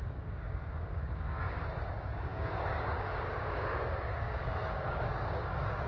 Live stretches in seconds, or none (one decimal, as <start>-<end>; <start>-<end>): none

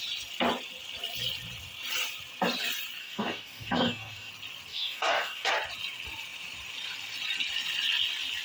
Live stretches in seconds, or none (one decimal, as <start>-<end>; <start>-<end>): 0.0-3.0; 4.3-4.7; 5.5-8.4

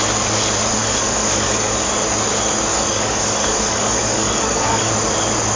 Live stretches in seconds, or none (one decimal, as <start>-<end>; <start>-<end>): 0.0-0.8; 1.9-2.7; 4.9-5.6

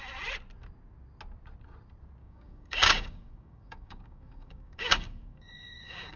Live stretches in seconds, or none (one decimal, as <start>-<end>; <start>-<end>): 0.0-2.2

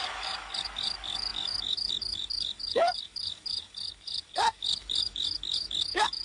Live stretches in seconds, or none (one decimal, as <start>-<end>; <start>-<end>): none